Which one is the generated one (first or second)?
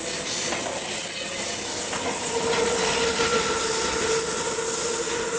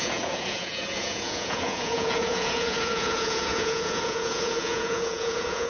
second